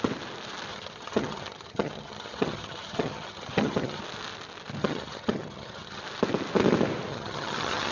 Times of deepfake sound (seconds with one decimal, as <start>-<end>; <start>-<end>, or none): 0.7-4.0; 4.8-6.0; 7.1-7.9